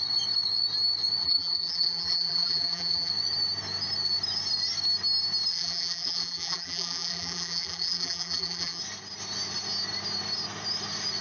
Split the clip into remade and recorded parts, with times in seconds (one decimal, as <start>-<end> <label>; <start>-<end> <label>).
0.0-1.2 recorded; 1.2-3.1 remade; 3.1-5.5 recorded; 5.5-8.8 remade; 8.8-11.2 recorded